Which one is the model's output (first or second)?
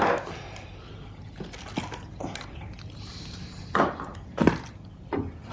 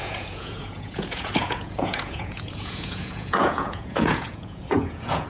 second